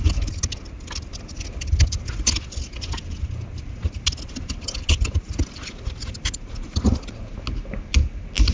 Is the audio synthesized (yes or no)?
no